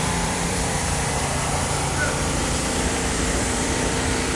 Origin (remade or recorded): remade